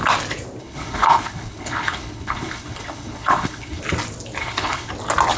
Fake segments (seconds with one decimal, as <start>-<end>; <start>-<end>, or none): 0.6-3.8; 4.4-4.9